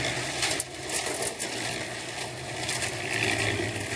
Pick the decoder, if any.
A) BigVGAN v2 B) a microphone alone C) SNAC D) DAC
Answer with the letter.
B